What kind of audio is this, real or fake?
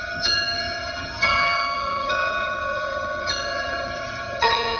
fake